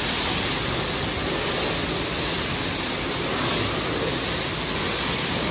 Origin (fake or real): real